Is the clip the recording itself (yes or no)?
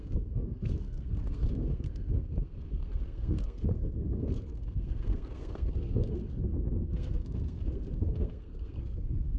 no